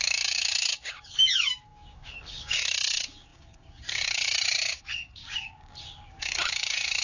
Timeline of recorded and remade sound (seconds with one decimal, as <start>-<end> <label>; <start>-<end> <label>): 0.0-7.0 remade